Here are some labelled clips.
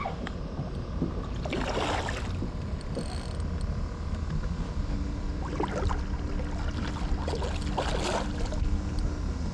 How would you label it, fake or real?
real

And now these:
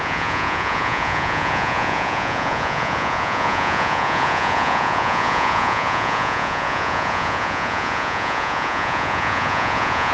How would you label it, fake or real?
fake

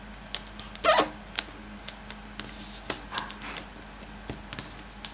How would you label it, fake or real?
real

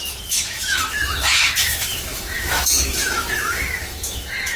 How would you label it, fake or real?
fake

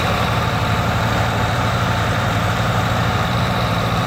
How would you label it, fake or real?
fake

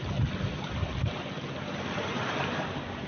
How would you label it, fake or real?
real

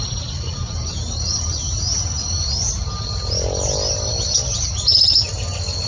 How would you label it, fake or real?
real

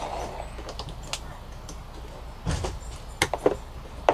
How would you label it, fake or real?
real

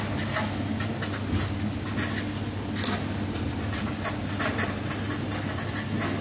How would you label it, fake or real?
real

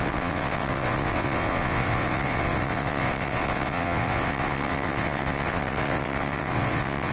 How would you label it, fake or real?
fake